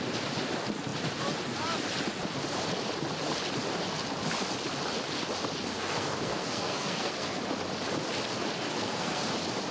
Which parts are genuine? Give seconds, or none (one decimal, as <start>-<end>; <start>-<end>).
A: 0.0-5.7; 7.4-8.7; 9.2-9.7